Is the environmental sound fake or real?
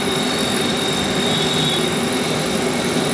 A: real